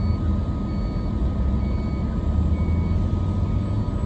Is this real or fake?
real